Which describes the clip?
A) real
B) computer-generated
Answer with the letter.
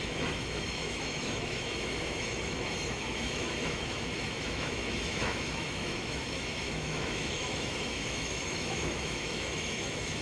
B